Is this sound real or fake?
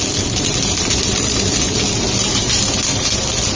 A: real